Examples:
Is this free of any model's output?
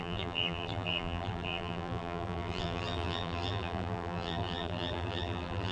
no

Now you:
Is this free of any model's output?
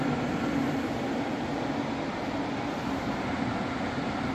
no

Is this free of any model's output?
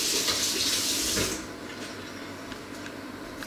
yes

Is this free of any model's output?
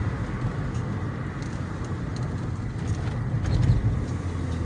yes